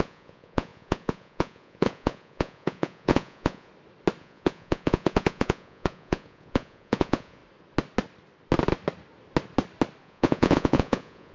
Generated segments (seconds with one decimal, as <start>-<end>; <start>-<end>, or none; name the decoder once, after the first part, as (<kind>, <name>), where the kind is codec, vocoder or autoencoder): 0.0-3.7 (vocoder, Vocos); 4.2-7.4; 10.0-11.3